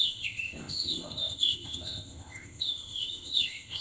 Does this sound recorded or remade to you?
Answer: remade